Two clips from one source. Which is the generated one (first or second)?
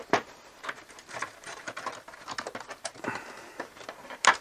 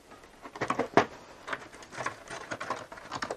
first